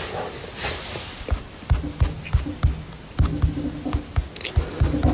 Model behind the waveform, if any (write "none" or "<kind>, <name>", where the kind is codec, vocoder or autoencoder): none